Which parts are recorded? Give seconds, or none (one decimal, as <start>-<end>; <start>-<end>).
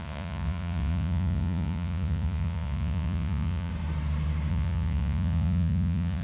3.7-4.5